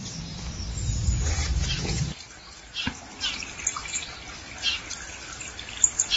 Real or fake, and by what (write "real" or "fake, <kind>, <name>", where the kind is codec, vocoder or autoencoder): real